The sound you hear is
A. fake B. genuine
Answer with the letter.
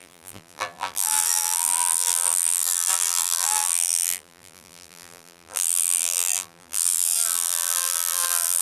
A